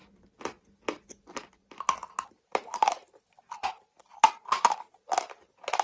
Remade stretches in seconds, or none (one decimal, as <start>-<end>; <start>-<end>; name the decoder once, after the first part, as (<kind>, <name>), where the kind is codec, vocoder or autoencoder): none